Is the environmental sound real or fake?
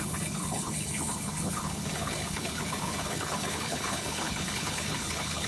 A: fake